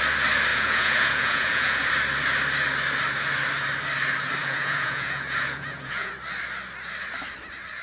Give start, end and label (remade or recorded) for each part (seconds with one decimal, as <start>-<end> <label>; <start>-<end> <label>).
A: 0.0-0.5 recorded; 0.5-1.9 remade; 1.9-4.4 recorded; 4.4-6.1 remade; 6.1-7.8 recorded

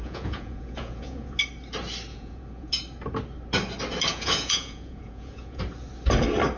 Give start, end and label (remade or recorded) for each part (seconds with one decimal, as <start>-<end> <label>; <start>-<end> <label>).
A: 0.0-1.4 remade; 1.4-2.1 recorded; 2.1-2.7 remade; 2.7-4.1 recorded; 4.1-5.6 remade; 5.6-6.6 recorded